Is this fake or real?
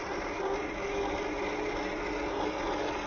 real